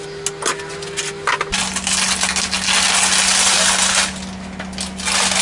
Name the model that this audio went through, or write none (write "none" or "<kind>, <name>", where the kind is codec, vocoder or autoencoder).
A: none